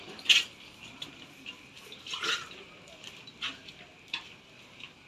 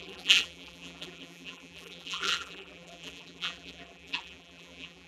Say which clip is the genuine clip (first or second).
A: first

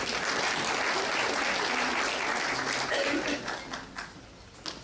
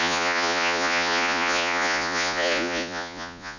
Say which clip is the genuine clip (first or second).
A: first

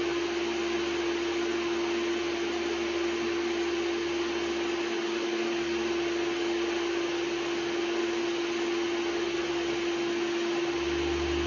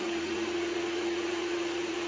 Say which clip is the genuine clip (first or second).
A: first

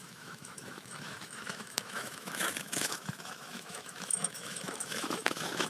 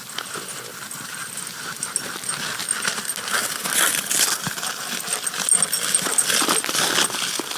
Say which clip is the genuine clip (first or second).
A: second